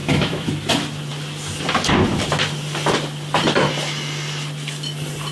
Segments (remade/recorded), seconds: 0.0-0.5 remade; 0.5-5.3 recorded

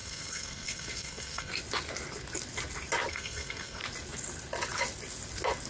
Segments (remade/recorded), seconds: 0.0-1.5 remade; 1.5-3.1 recorded; 3.1-3.8 remade; 3.8-5.7 recorded

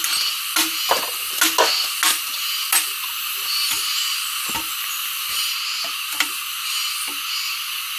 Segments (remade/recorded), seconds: 0.0-2.4 recorded; 2.4-2.9 remade; 2.9-8.0 recorded

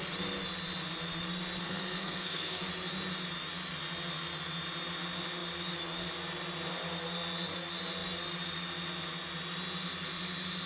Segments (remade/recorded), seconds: 0.0-1.6 recorded; 1.6-2.6 remade; 2.6-10.7 recorded

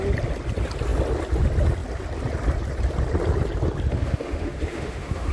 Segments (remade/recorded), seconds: 0.0-3.9 recorded; 3.9-5.3 remade

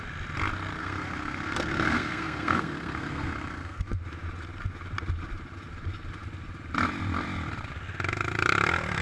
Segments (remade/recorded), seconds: 0.0-0.8 recorded; 0.8-4.0 remade; 4.0-9.0 recorded

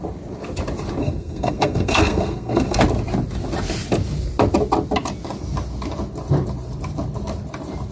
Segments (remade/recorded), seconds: 0.0-1.0 recorded; 1.0-2.8 remade; 2.8-7.9 recorded

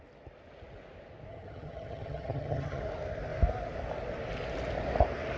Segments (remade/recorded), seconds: 0.0-1.3 recorded; 1.3-2.8 remade; 2.8-5.4 recorded